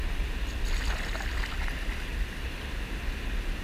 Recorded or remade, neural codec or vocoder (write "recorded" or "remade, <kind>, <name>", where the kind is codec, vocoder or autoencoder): recorded